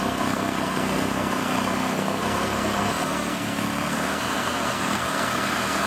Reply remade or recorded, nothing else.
remade